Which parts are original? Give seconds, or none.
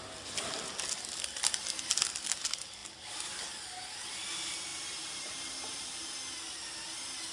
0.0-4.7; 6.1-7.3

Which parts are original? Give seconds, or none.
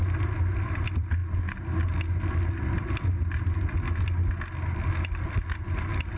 1.2-4.9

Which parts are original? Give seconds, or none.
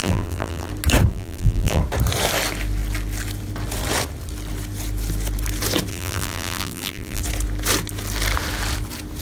0.7-1.1; 1.8-5.9; 7.2-9.2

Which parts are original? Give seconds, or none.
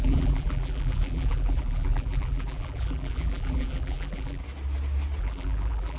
4.4-5.2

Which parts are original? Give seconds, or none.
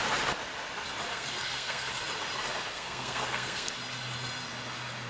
0.0-1.1; 1.9-2.7; 3.7-5.1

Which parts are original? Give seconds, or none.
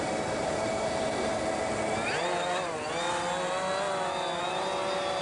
1.3-4.4